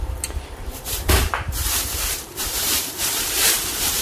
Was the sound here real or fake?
fake